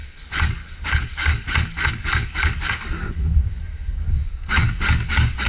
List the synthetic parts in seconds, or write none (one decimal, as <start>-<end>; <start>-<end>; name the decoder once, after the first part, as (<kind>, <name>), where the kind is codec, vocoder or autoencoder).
0.0-5.5 (codec, DAC)